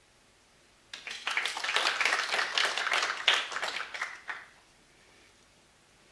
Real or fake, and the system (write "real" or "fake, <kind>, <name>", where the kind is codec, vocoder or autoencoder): real